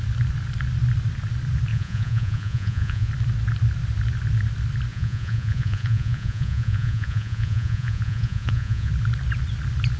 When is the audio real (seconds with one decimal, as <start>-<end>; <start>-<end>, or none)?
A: 0.0-1.7; 3.1-4.9; 8.9-10.0